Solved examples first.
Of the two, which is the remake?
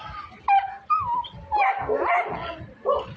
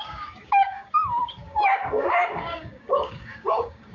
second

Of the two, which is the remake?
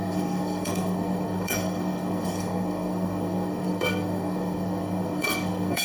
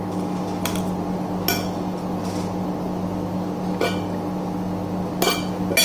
first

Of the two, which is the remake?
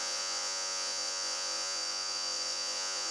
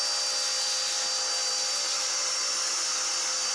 first